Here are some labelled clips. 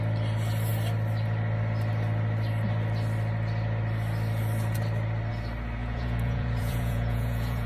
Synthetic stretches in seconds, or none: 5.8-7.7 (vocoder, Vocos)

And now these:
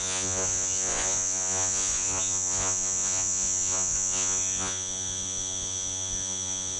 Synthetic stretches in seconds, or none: 0.0-6.8 (vocoder, Vocos)

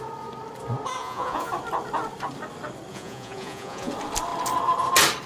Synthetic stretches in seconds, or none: 1.0-1.5 (vocoder, Vocos); 2.9-3.9

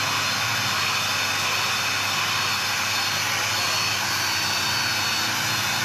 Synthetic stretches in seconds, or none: none